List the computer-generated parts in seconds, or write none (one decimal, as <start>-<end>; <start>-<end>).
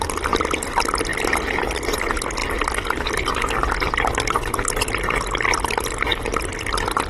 none